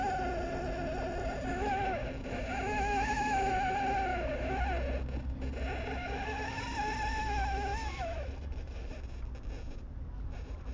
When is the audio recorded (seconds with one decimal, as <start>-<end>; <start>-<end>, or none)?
0.0-1.5; 3.5-4.1; 4.6-6.0; 6.6-7.2; 8.9-10.7